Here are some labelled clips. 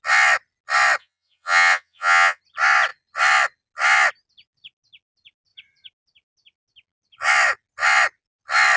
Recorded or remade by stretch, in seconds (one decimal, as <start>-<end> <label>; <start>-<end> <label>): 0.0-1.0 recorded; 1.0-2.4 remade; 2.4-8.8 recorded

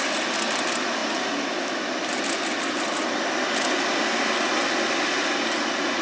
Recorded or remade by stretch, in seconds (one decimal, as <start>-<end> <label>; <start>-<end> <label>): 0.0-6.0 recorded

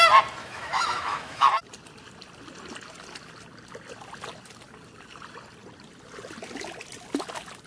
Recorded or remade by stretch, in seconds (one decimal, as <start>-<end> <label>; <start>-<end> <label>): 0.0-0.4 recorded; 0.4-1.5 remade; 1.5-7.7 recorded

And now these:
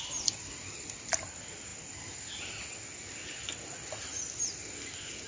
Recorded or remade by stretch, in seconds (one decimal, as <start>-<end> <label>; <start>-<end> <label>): 0.0-5.3 recorded